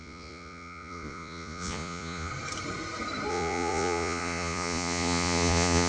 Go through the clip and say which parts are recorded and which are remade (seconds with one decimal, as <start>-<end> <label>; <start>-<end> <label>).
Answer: 0.0-2.3 remade; 2.3-3.3 recorded; 3.3-5.9 remade